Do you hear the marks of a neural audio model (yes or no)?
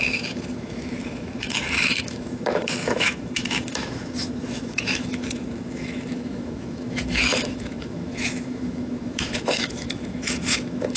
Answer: yes